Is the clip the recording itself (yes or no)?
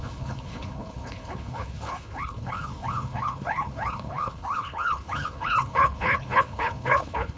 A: no